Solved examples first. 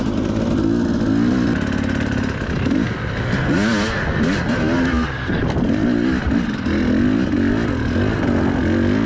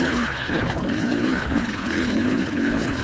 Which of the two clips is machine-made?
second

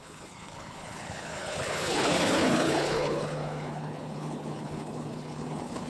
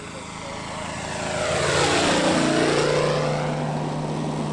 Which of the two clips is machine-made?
first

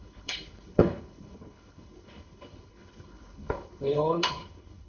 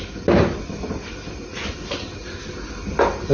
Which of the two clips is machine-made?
first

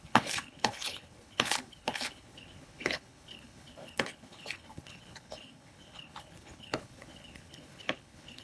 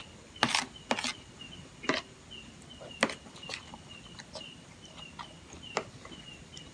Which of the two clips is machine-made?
first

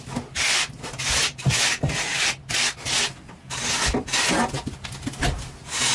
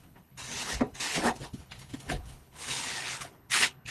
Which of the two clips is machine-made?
second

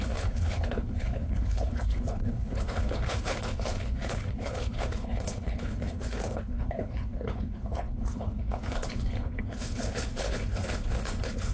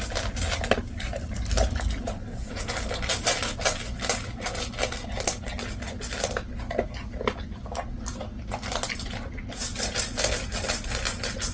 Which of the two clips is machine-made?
first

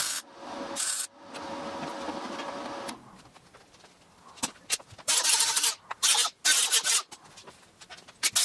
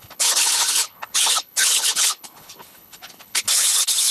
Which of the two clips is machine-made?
second